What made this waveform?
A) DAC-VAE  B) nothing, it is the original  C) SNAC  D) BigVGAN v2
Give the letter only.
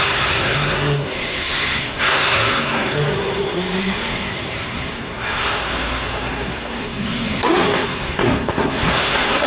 C